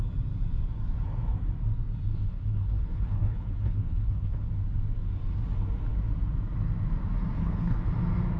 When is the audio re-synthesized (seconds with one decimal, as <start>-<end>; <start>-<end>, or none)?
2.1-4.5; 7.4-7.9